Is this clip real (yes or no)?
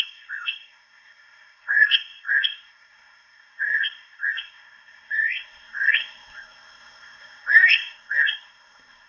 no